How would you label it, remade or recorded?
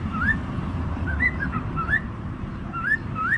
remade